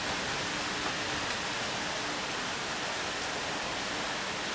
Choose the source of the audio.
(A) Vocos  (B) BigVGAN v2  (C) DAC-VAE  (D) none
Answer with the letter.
D